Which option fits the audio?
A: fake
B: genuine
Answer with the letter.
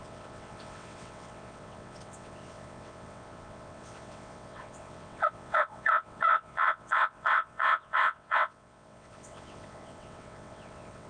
A